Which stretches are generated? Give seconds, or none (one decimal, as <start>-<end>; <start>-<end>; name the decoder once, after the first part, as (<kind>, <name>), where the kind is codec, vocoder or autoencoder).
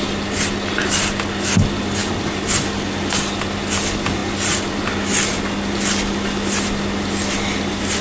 none